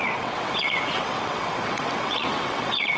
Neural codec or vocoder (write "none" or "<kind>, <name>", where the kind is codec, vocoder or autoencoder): vocoder, WaveNeXt